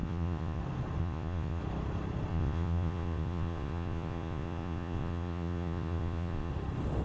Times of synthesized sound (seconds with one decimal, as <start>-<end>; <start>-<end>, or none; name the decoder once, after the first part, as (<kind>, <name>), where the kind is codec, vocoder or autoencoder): 0.0-0.6 (vocoder, Vocos); 1.0-1.6; 2.3-6.5